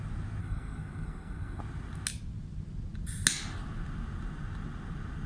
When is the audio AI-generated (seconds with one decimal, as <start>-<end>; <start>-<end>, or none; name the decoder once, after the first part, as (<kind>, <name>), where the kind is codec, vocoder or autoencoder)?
0.4-1.6 (codec, SNAC)